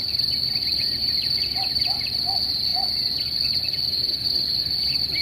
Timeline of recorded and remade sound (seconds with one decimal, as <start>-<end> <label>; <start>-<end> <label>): 0.0-5.2 recorded